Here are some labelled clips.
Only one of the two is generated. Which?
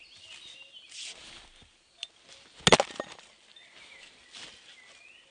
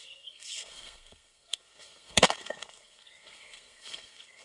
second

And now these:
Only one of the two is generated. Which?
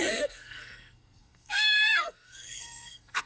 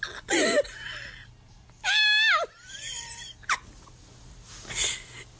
first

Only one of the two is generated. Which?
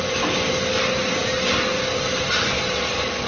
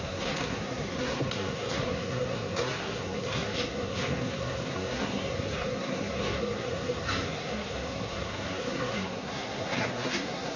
second